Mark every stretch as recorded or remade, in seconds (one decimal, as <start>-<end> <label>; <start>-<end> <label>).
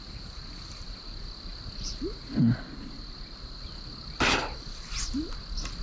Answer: 0.0-5.8 recorded